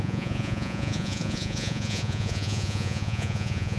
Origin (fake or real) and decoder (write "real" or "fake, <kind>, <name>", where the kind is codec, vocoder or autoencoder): fake, vocoder, Vocos